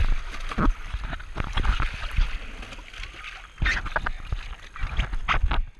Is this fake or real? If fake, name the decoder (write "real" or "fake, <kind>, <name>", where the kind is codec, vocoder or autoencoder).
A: real